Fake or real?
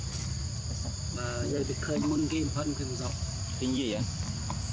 fake